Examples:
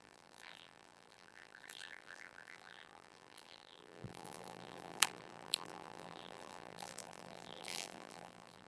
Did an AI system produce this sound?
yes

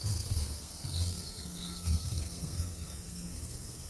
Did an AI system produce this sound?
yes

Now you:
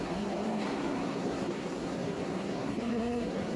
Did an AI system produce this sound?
yes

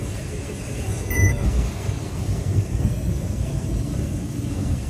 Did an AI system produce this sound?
yes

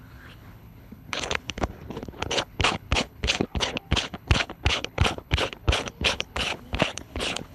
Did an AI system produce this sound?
yes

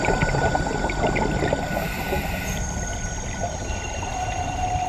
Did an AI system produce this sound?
no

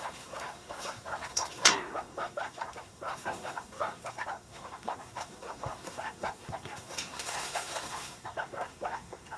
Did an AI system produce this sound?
yes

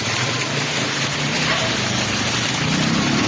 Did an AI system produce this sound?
no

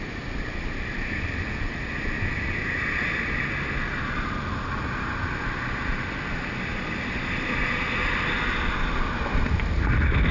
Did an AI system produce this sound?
no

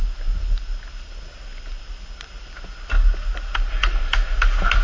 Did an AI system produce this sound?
no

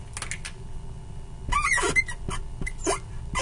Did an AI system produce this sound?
no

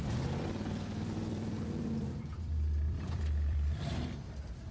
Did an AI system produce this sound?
yes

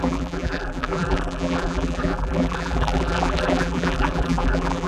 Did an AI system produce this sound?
yes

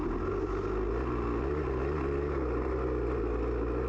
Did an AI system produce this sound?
no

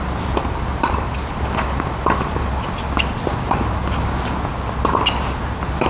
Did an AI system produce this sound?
no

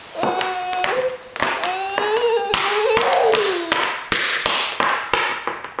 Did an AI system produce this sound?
no